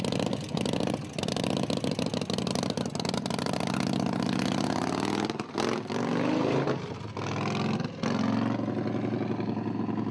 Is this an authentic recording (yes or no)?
yes